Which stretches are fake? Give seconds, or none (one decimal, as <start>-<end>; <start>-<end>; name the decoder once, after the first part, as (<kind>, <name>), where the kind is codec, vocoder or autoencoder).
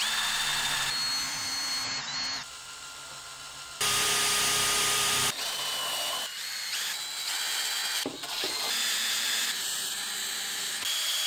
none